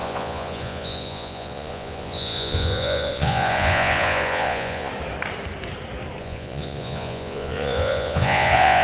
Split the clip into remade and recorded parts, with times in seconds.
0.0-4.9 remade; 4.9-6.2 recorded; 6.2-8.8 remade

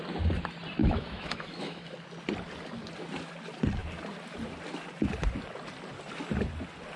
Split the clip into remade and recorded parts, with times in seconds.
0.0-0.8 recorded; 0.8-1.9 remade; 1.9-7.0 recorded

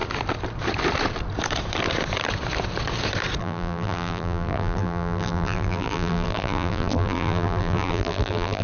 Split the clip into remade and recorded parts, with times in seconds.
0.0-3.4 recorded; 3.4-8.6 remade